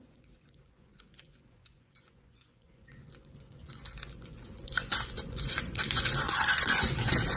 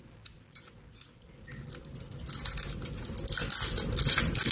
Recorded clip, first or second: second